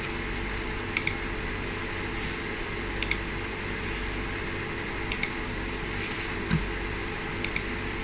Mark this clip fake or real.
real